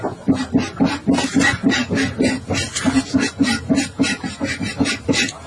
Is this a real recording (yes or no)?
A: yes